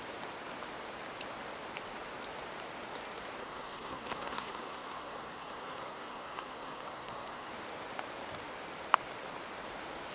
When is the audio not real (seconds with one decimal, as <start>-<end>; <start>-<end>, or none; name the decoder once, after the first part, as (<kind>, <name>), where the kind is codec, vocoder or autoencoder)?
3.4-7.5 (codec, SNAC)

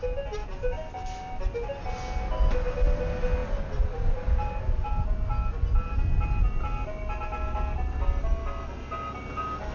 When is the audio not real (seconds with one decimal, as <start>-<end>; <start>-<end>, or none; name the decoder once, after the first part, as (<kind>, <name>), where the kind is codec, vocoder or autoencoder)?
none

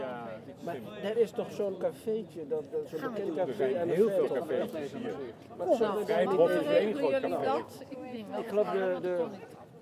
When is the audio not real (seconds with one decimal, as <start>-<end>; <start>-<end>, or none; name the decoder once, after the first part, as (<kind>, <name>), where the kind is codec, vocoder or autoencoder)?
4.6-5.1 (autoencoder, DAC-VAE); 7.4-9.0

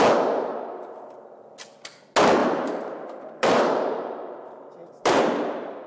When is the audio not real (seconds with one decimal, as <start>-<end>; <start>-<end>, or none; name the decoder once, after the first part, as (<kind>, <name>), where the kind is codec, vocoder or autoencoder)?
2.4-5.2 (vocoder, BigVGAN v2)